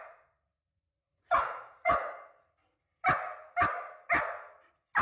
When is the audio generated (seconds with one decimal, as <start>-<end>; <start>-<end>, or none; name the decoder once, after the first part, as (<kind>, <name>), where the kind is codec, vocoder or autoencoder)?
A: 0.0-1.9 (vocoder, Vocos)